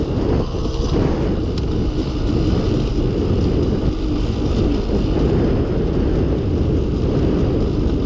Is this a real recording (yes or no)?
yes